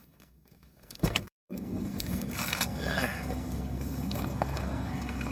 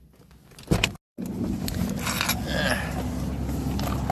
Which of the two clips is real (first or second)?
second